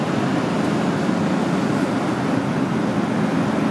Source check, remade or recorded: recorded